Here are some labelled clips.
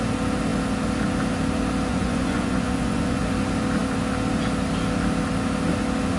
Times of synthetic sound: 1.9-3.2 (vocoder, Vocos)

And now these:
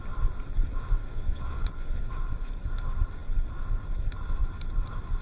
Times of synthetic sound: 1.1-2.0 (vocoder, Vocos)

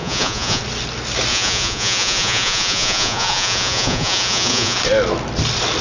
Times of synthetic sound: 0.0-0.6 (vocoder, Vocos); 1.3-4.8

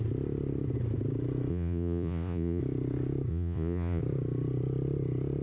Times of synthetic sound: 1.5-2.6 (vocoder, Vocos); 3.3-4.0

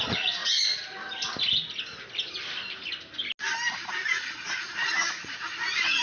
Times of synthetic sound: 0.0-0.4 (vocoder, Vocos); 3.9-6.0

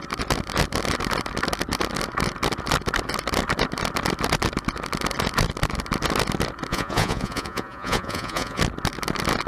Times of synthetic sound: 6.7-8.6 (vocoder, Vocos)

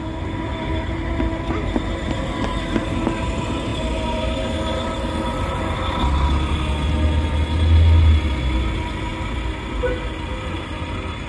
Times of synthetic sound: none

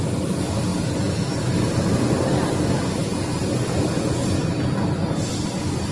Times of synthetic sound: none